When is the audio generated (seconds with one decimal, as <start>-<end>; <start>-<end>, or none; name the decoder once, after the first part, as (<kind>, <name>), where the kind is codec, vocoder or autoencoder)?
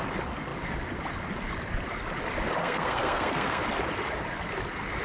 2.6-3.6 (codec, SNAC)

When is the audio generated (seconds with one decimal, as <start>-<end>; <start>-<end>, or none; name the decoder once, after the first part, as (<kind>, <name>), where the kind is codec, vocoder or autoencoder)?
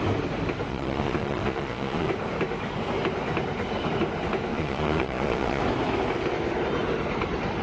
0.7-2.1 (vocoder, Vocos); 4.5-5.6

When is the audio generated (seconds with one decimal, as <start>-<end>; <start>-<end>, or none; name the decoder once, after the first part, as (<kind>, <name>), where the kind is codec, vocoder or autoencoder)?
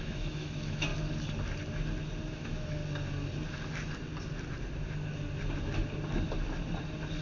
0.0-0.9 (autoencoder, DAC-VAE); 2.3-2.8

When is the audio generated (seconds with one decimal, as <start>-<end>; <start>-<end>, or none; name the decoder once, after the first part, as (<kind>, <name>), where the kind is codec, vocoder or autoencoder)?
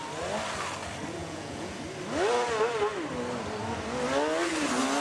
1.2-1.8 (vocoder, Vocos)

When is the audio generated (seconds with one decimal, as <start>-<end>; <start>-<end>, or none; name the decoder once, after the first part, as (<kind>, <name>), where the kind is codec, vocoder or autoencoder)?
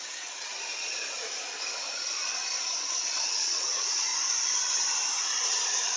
0.0-0.5 (vocoder, WaveNeXt); 2.8-4.1